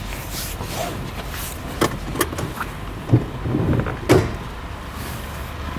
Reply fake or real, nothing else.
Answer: real